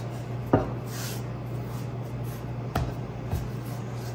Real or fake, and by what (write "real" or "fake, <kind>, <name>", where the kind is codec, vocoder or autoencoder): real